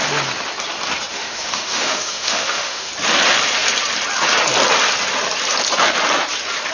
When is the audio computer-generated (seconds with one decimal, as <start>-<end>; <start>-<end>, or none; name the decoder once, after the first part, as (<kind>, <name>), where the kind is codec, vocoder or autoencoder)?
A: 1.1-2.9 (autoencoder, DAC-VAE)